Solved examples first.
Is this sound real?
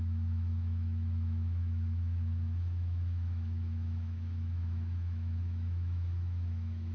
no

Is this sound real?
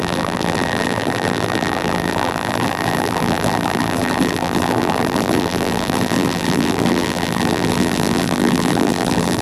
no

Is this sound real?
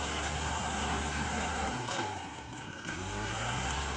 no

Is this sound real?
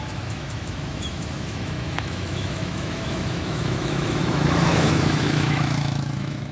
no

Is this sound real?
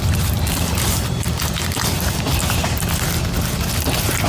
yes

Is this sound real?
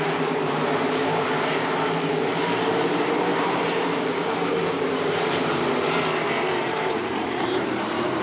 no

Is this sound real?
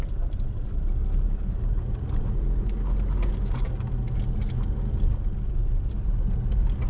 yes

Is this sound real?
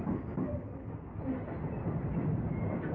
yes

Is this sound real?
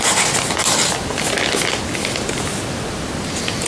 yes